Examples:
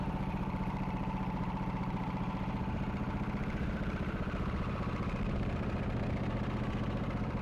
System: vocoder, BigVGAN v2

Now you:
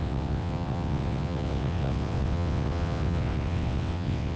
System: vocoder, WaveNeXt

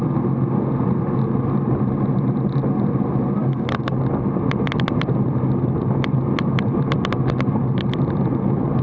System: none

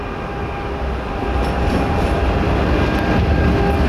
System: none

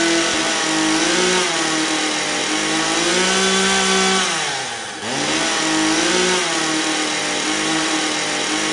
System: none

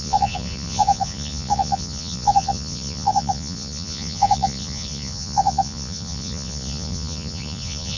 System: vocoder, Vocos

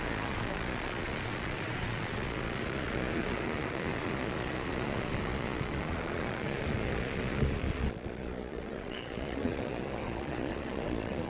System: vocoder, Vocos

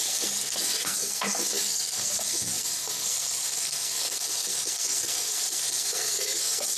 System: codec, SNAC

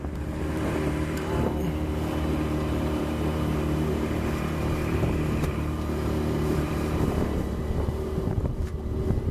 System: vocoder, BigVGAN v2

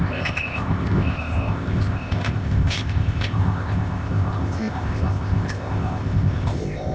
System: codec, ZipCodec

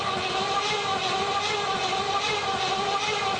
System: none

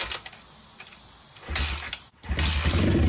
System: none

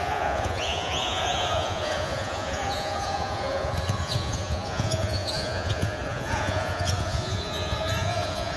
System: vocoder, Vocos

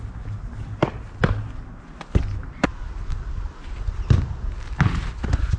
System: none